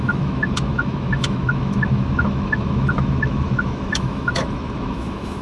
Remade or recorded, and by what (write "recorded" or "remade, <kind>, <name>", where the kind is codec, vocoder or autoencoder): remade, autoencoder, DAC-VAE